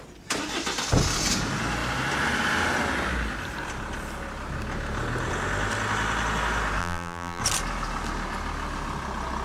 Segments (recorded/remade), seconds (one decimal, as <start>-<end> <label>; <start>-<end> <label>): 0.0-6.8 recorded; 6.8-7.4 remade; 7.4-9.4 recorded